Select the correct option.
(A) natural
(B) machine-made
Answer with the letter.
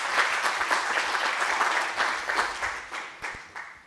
A